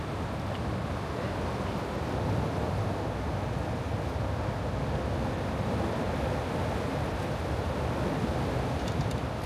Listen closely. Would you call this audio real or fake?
real